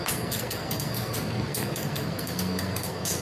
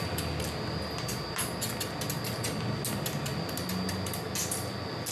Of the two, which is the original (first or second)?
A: second